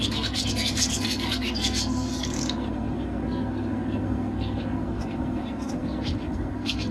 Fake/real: fake